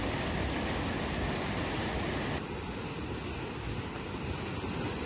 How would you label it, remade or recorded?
recorded